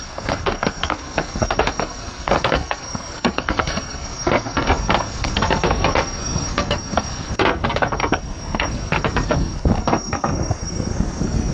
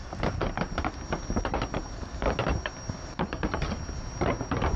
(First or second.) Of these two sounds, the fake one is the first